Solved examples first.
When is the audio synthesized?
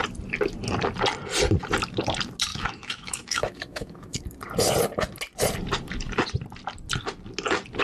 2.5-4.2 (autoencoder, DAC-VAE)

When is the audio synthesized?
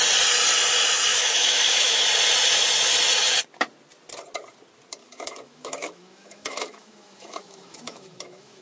1.1-2.0 (autoencoder, DAC-VAE); 5.0-8.6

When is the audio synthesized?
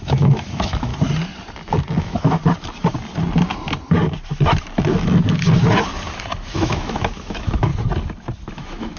0.0-0.9 (autoencoder, DAC-VAE); 2.0-2.4; 6.5-7.7; 8.5-9.0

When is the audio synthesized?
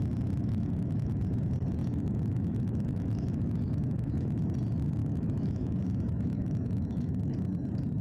0.4-1.2 (autoencoder, DAC-VAE); 1.8-4.4; 5.0-7.3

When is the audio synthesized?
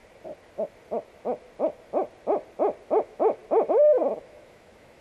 3.0-3.4 (autoencoder, DAC-VAE); 4.0-5.0